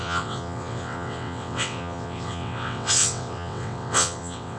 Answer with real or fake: fake